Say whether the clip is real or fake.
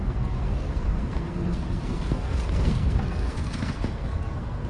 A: fake